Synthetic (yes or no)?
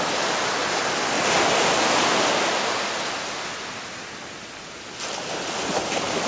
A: no